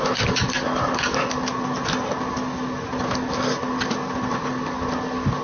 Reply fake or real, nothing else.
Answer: real